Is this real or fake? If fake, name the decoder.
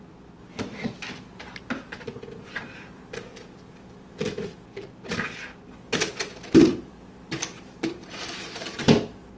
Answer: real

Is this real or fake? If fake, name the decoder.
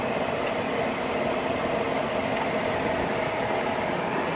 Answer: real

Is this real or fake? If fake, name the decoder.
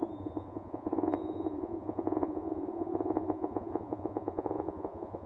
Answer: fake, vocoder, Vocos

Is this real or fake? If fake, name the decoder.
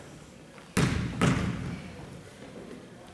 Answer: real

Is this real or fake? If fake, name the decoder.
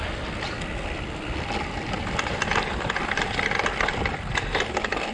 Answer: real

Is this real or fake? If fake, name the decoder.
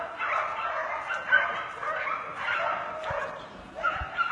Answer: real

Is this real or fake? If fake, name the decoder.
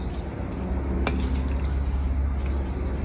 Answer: real